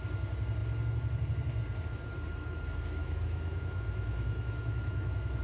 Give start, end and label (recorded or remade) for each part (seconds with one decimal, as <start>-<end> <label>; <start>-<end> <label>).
0.0-3.0 recorded; 3.0-5.4 remade

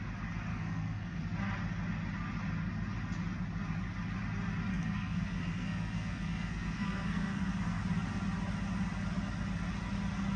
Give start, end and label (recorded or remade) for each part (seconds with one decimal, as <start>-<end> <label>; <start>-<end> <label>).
0.0-0.5 recorded; 0.5-1.2 remade; 1.2-4.7 recorded; 4.7-7.8 remade; 7.8-10.4 recorded